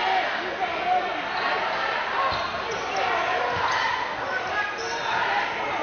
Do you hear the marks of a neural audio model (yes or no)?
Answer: no